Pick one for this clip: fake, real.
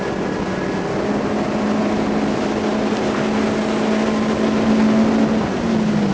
real